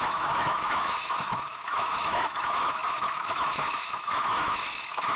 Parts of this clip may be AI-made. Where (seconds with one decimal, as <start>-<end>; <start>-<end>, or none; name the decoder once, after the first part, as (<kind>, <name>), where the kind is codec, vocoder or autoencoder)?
0.0-5.2 (autoencoder, DAC-VAE)